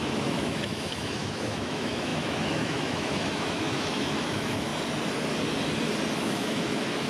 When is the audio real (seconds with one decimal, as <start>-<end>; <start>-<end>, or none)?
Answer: 4.7-6.1